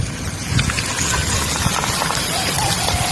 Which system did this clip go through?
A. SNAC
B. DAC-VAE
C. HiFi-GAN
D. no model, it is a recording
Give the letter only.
D